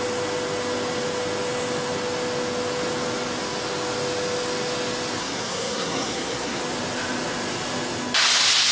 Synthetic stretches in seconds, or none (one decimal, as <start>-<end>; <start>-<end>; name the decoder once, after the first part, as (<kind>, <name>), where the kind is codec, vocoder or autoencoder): 5.2-6.6 (codec, SNAC)